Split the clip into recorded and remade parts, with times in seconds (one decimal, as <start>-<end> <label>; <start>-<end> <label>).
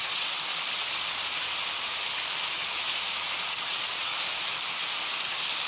0.0-0.5 remade; 0.5-3.5 recorded; 3.5-4.1 remade; 4.1-5.7 recorded